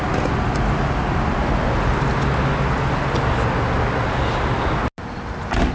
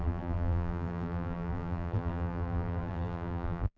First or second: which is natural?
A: first